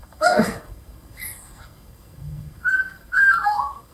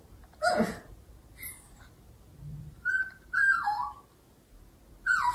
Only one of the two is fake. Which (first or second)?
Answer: first